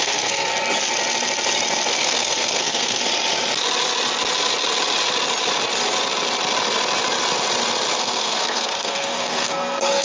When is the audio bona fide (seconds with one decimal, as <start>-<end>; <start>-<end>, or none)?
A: 0.5-1.9; 3.0-8.0